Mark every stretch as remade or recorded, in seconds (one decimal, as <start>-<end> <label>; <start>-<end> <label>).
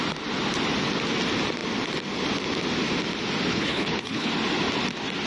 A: 0.0-3.5 recorded; 3.5-4.3 remade; 4.3-5.3 recorded